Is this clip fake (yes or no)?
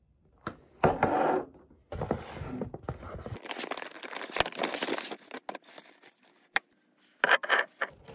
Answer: no